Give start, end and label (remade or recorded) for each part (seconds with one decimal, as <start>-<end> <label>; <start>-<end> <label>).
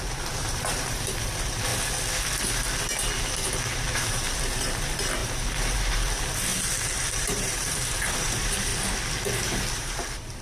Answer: 0.0-1.7 remade; 1.7-3.6 recorded; 3.6-8.7 remade; 8.7-9.8 recorded; 9.8-10.4 remade